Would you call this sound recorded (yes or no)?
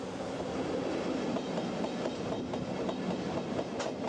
yes